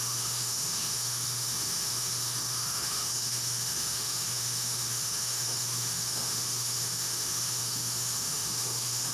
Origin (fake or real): fake